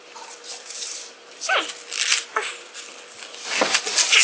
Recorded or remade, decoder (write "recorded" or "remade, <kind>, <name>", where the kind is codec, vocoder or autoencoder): remade, vocoder, BigVGAN v2